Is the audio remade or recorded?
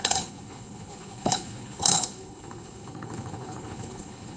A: remade